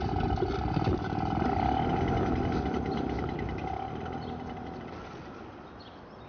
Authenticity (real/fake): real